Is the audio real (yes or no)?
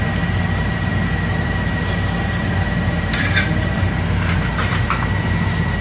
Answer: no